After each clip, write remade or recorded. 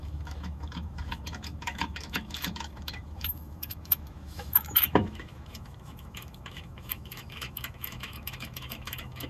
remade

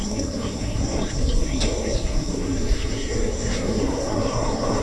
remade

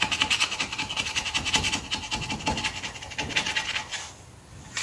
recorded